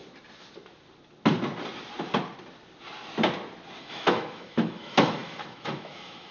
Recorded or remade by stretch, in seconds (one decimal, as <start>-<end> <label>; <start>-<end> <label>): 0.0-3.8 recorded; 3.8-6.3 remade